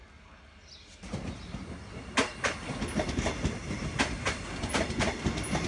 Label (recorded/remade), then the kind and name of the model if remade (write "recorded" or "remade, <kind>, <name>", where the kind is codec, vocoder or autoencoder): recorded